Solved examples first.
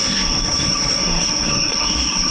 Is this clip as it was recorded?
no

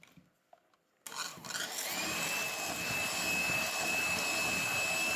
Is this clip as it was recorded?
yes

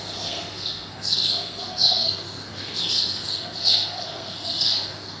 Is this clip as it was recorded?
no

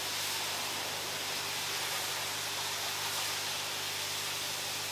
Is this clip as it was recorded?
yes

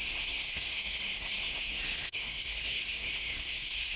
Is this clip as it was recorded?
no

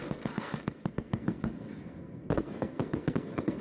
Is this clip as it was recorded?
no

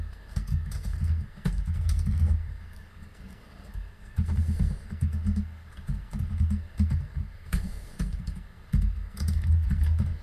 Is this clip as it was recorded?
no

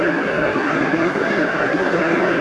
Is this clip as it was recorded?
no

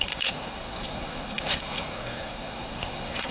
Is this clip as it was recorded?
no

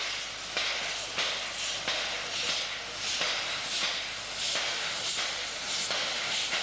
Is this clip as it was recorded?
yes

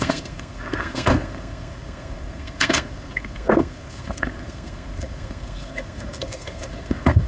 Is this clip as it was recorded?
no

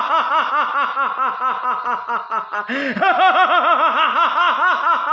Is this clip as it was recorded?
yes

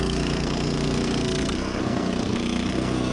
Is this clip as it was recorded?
no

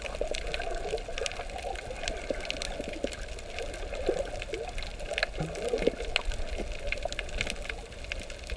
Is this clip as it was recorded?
yes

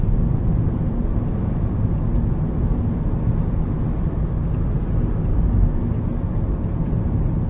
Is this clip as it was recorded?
yes